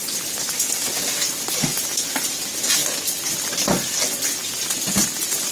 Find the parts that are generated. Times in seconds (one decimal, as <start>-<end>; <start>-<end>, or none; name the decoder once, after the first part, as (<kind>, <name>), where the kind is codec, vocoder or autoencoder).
1.7-2.2 (vocoder, Vocos)